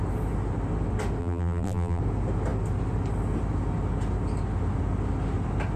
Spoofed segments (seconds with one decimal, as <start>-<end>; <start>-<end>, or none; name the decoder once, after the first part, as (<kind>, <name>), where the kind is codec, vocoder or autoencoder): 1.2-2.0 (vocoder, BigVGAN v2)